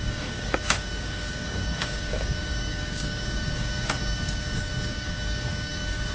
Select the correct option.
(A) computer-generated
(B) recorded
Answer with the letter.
A